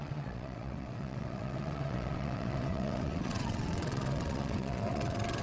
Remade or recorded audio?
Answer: remade